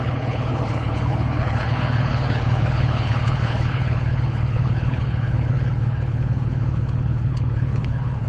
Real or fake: fake